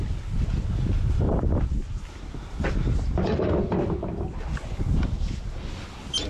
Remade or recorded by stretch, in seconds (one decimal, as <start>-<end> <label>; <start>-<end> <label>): 0.0-6.3 recorded